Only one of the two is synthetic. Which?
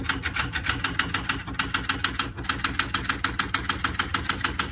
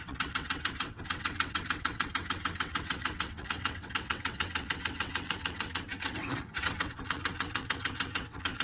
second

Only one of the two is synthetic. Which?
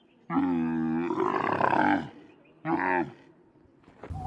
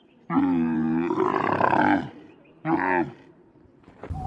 second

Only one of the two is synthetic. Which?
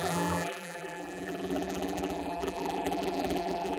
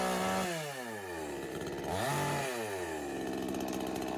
first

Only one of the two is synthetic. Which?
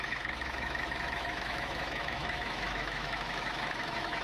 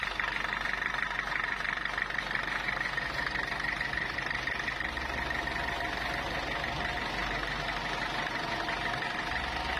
first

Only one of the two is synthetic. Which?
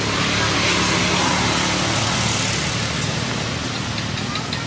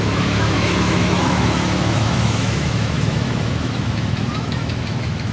second